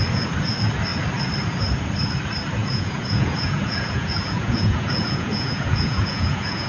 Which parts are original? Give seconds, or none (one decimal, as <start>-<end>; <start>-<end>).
0.0-2.6